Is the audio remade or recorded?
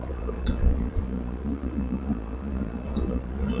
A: remade